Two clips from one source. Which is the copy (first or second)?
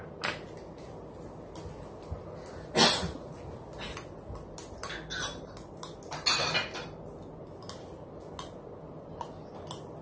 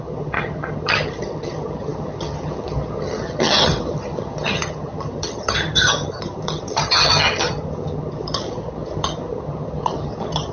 second